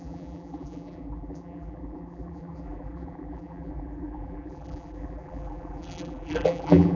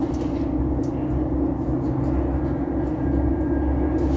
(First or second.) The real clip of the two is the second